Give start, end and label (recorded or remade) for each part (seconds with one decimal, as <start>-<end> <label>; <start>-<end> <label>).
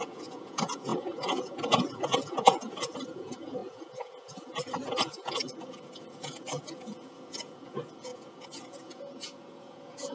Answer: 0.0-10.1 remade